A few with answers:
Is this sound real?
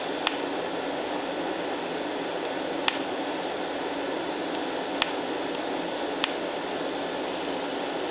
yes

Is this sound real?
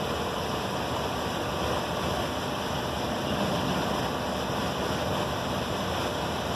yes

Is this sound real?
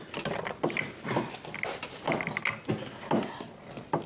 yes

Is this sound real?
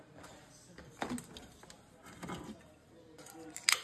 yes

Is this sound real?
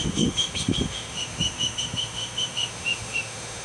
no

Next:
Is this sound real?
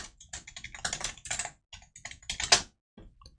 yes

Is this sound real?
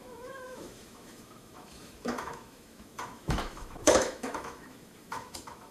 no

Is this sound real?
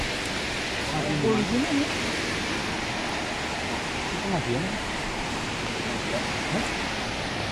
yes